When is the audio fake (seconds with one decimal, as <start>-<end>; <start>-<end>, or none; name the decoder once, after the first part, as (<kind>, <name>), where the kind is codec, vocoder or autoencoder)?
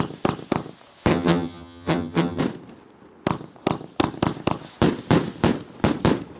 1.1-2.4 (vocoder, HiFi-GAN)